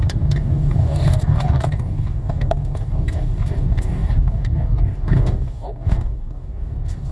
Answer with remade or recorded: remade